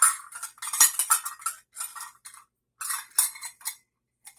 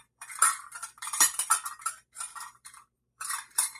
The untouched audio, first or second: first